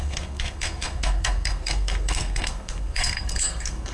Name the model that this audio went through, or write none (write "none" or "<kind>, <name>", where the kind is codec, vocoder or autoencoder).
codec, SNAC